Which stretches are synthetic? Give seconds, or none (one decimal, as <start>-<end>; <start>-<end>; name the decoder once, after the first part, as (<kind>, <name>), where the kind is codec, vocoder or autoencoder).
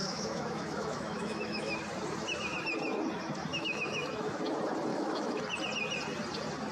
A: 0.0-1.8 (autoencoder, DAC-VAE); 3.5-4.4; 4.9-5.4